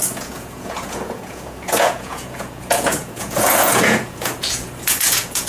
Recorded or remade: remade